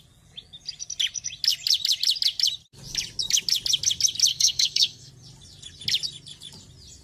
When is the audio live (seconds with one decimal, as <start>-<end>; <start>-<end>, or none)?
0.0-4.3; 5.1-7.0